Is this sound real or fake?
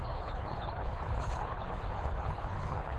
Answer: fake